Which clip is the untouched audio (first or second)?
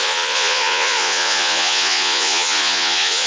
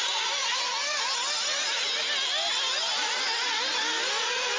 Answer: second